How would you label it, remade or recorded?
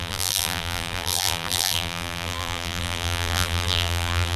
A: remade